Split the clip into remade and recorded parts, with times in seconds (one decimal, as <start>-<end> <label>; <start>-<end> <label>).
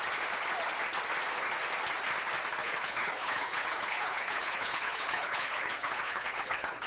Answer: 0.0-2.6 recorded; 2.6-6.9 remade